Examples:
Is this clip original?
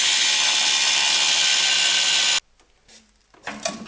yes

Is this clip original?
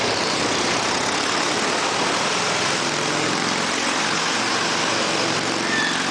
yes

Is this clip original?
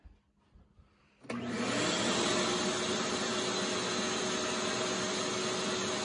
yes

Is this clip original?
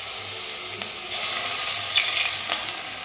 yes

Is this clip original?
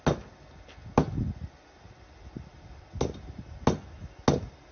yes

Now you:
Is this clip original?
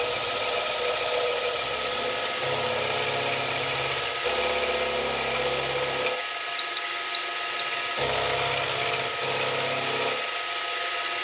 yes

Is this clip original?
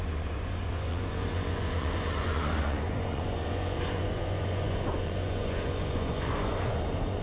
no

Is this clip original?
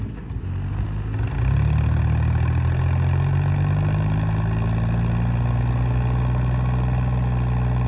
yes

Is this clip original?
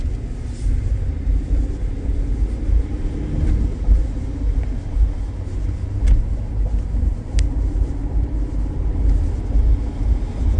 yes